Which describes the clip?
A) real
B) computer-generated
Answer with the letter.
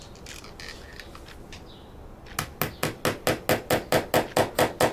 A